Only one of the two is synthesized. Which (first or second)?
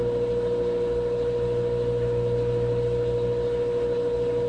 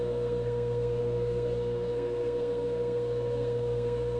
second